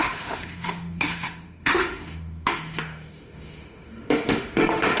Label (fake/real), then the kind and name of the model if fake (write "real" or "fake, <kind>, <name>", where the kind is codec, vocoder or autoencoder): fake, autoencoder, DAC-VAE